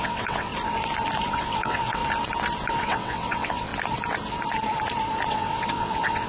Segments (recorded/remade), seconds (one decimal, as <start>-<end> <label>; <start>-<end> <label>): 0.0-0.5 remade; 0.5-1.3 recorded; 1.3-2.0 remade; 2.0-2.8 recorded; 2.8-3.7 remade; 3.7-5.3 recorded; 5.3-6.3 remade